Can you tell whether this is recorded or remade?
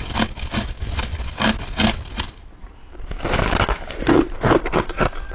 recorded